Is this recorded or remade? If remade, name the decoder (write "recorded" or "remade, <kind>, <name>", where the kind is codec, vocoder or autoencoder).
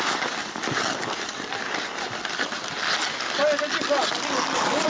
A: recorded